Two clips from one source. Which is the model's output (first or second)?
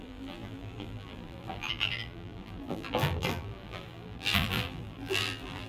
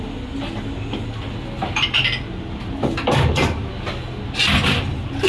first